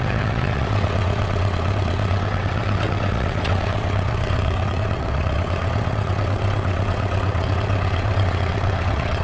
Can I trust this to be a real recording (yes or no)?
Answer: no